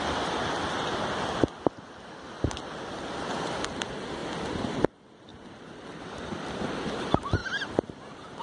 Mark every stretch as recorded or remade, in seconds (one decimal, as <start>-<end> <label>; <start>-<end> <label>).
0.0-8.4 recorded